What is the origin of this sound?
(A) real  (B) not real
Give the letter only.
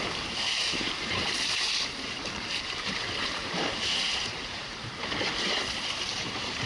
B